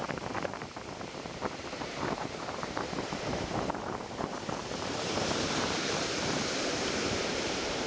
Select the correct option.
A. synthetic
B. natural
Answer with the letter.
A